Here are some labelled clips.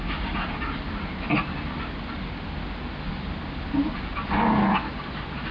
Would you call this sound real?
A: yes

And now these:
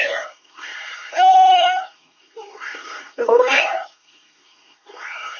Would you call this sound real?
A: no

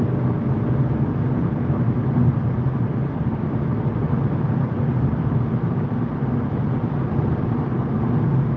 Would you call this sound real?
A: yes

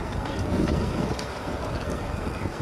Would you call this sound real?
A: no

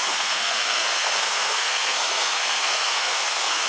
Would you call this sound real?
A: no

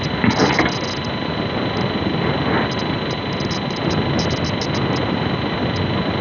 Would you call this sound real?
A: yes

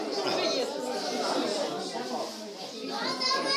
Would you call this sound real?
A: yes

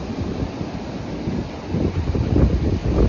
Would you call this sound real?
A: yes